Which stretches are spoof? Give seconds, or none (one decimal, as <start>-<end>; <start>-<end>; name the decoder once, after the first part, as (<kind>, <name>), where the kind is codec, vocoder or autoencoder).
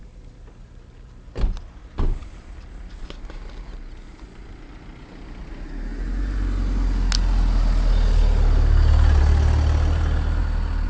none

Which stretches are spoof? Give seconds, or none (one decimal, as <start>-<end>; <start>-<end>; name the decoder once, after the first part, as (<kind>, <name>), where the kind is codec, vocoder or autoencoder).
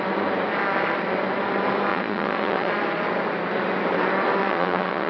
1.9-2.7 (vocoder, Vocos); 4.4-5.1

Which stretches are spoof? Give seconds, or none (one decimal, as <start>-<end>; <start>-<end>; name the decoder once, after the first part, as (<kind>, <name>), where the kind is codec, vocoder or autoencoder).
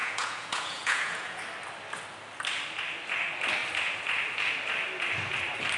0.0-1.4 (vocoder, Vocos)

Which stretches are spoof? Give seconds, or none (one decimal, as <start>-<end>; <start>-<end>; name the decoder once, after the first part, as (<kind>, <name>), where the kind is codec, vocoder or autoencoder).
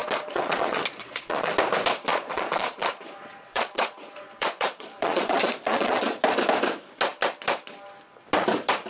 0.0-1.5 (vocoder, Vocos); 2.1-6.2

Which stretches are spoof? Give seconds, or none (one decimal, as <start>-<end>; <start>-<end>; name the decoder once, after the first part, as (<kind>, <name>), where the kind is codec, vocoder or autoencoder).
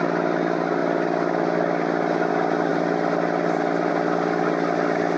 none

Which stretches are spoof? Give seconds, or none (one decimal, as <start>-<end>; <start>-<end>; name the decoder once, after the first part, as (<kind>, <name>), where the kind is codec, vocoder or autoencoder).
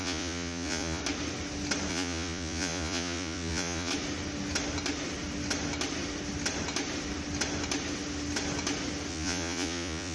0.0-1.0 (vocoder, Vocos); 1.9-3.9; 9.1-10.1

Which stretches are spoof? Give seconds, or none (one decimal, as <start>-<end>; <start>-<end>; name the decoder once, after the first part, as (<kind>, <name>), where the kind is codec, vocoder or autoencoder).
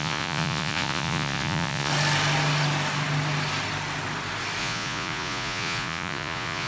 0.0-1.9 (vocoder, Vocos); 4.6-6.7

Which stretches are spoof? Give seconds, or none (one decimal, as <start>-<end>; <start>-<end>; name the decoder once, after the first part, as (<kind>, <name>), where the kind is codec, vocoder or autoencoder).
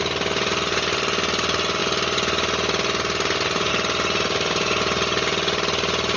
none